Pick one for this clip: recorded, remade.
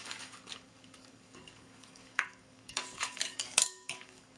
remade